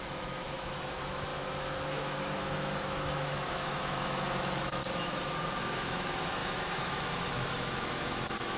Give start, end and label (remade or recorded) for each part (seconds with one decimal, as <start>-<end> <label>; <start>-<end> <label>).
0.0-4.8 remade; 4.8-5.6 recorded; 5.6-8.6 remade